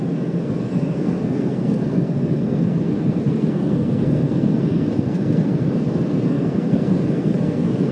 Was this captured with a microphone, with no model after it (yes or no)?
no